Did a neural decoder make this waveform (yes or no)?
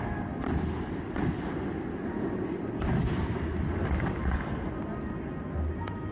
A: no